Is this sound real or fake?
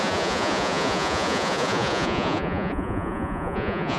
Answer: fake